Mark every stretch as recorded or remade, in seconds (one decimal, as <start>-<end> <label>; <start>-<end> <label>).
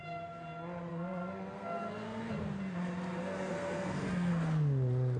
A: 0.0-0.9 recorded; 0.9-2.3 remade; 2.3-3.2 recorded; 3.2-4.3 remade; 4.3-5.2 recorded